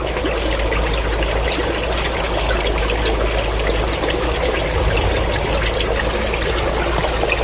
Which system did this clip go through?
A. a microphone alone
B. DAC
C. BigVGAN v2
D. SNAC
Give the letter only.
A